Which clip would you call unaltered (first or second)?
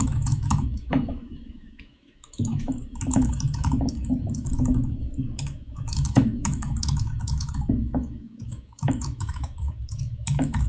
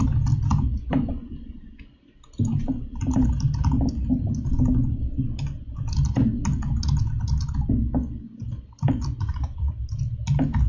second